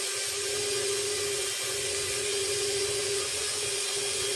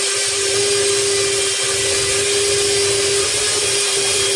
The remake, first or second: first